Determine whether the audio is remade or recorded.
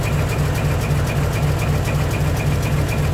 recorded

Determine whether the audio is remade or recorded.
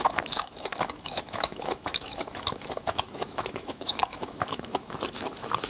remade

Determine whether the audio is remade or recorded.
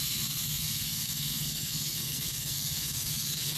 remade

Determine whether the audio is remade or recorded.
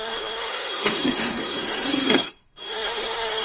remade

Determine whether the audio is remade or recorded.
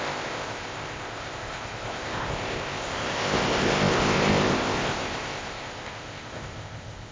remade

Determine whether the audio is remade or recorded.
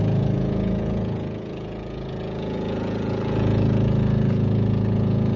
remade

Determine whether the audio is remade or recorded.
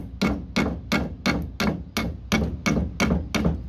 recorded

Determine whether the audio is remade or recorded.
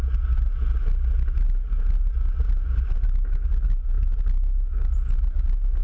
recorded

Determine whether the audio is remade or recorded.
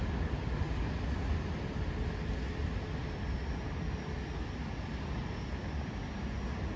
recorded